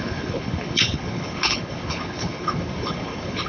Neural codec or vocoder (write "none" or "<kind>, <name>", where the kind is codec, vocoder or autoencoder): codec, HILCodec